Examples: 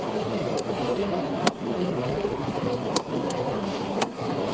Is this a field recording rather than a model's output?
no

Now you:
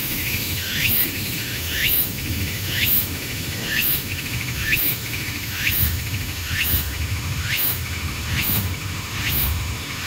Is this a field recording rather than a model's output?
no